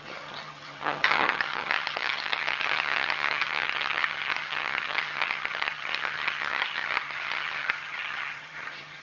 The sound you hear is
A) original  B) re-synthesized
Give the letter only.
B